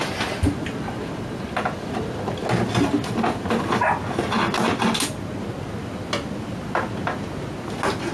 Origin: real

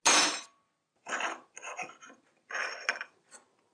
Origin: real